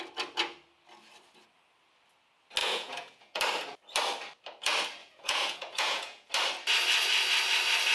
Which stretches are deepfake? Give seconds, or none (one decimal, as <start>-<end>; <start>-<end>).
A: 2.6-3.4; 5.0-6.3